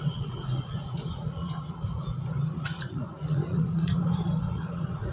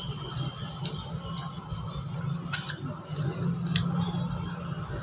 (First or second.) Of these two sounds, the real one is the second